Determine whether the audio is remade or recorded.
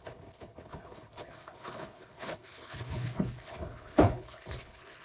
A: remade